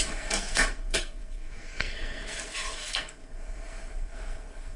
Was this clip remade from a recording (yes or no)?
yes